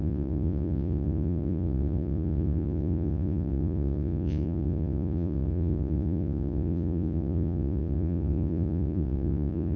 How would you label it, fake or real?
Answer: fake